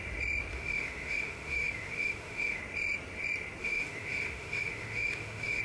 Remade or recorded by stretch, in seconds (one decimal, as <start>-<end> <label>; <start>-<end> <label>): 0.0-0.5 recorded; 0.5-2.6 remade; 2.6-3.6 recorded; 3.6-5.6 remade